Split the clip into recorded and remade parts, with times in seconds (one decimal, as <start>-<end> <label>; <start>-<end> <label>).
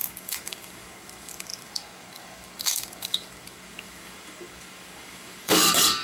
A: 0.0-6.0 remade